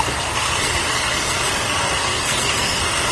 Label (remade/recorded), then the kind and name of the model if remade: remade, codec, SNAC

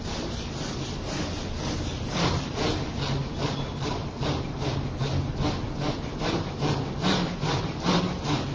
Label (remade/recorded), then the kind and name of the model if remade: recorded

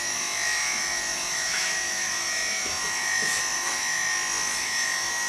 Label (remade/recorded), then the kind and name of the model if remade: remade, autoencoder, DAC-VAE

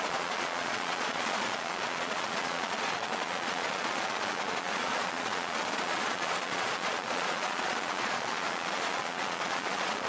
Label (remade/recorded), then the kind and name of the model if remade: remade, vocoder, Vocos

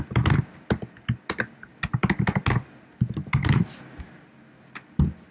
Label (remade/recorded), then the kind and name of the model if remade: recorded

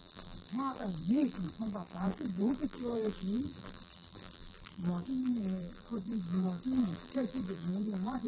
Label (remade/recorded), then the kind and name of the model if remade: remade, vocoder, BigVGAN v2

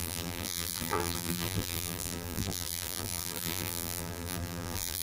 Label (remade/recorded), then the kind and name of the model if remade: remade, vocoder, BigVGAN v2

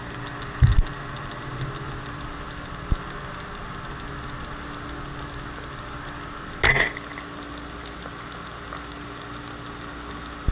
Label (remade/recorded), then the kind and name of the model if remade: recorded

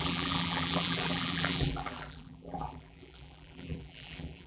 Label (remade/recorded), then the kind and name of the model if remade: remade, vocoder, BigVGAN v2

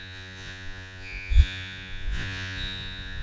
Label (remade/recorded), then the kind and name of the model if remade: remade, vocoder, Vocos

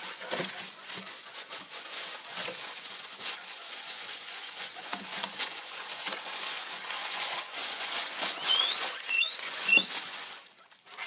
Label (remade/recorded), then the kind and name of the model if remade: remade, vocoder, Vocos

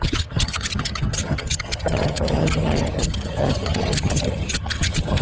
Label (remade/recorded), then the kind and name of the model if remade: remade, vocoder, HiFi-GAN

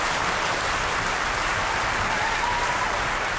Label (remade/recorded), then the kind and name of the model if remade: recorded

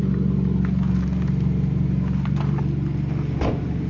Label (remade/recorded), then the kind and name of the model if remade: recorded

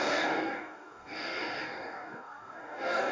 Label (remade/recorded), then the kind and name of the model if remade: remade, codec, DAC